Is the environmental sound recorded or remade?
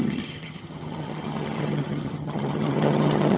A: remade